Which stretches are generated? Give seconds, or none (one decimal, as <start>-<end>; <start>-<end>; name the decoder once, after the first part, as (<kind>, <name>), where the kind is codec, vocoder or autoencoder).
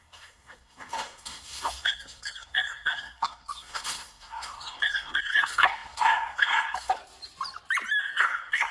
0.0-7.0 (codec, SNAC); 8.0-8.7